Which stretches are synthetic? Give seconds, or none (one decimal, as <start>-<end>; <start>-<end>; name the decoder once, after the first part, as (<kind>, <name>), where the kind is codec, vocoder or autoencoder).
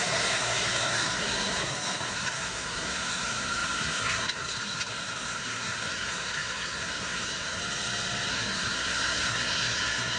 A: 0.0-7.6 (codec, SNAC); 8.3-10.2